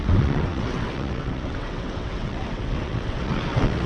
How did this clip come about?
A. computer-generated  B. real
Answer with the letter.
A